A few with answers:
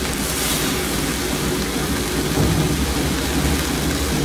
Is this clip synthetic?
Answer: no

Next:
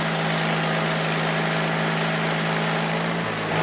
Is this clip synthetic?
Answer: no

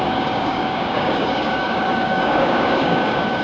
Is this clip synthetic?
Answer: yes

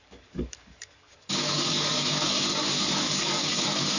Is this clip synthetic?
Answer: yes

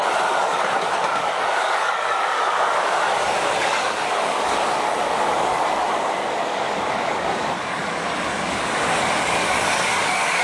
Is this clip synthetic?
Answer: yes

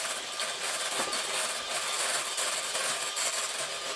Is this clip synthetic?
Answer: no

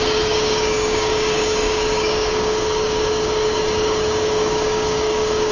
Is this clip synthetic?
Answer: yes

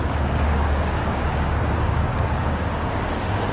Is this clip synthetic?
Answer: yes